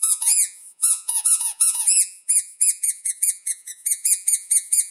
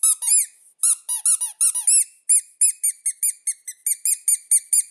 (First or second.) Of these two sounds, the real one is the second